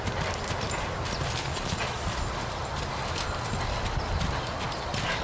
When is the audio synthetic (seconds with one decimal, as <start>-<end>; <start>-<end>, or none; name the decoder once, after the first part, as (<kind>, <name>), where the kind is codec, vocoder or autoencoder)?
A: 1.4-2.2 (vocoder, Vocos)